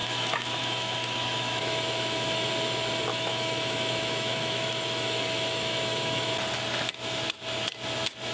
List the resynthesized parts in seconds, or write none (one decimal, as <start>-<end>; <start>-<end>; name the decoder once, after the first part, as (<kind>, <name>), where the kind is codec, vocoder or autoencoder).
0.0-2.5 (autoencoder, DAC-VAE); 3.1-6.3